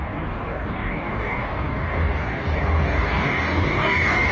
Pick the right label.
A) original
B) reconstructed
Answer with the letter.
B